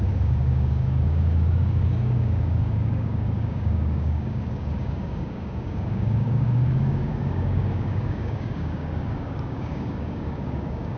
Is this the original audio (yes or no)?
no